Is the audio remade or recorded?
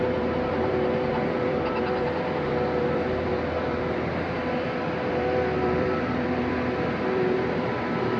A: remade